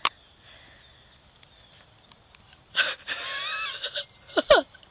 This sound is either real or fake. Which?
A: real